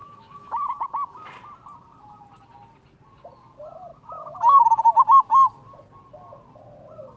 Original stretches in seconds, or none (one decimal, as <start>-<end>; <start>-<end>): 1.3-3.9; 4.8-7.2